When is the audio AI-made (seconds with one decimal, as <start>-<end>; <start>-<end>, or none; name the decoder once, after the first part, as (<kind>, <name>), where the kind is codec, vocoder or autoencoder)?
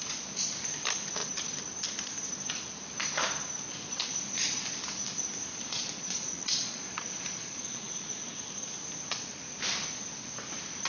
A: 5.5-8.3 (vocoder, Vocos)